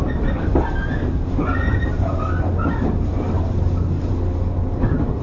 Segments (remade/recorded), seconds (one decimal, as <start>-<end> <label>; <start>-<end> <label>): 0.0-5.2 recorded